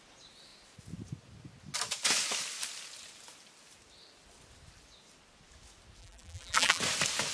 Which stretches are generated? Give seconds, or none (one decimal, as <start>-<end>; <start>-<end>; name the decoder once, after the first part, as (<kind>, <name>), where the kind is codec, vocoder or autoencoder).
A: 6.0-6.8 (vocoder, BigVGAN v2)